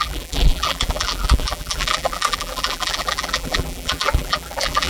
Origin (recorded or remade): remade